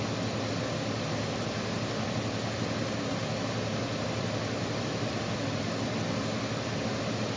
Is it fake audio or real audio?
fake